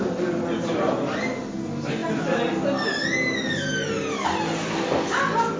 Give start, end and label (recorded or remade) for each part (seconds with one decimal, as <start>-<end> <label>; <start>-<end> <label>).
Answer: 0.0-5.6 recorded